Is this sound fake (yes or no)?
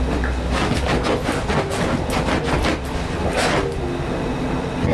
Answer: no